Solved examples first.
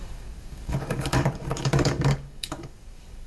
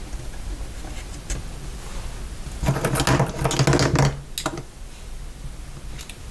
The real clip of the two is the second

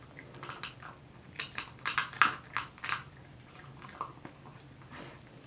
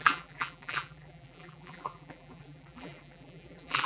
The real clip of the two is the first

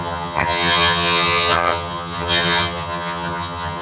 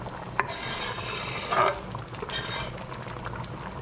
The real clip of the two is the second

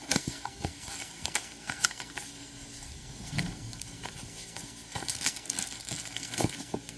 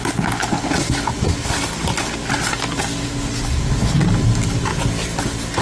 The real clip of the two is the second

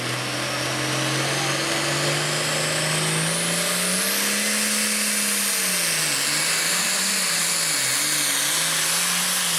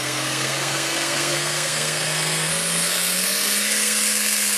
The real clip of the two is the first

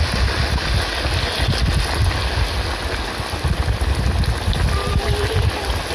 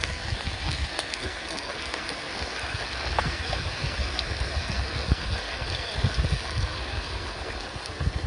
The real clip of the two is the first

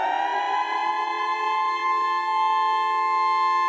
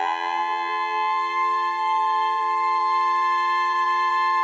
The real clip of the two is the first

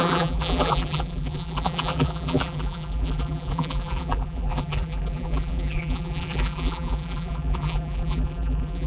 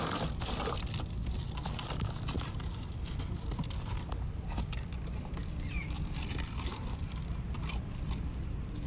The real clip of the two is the second